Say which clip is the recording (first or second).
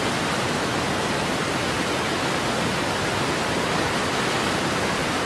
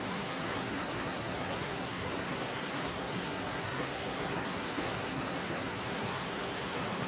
first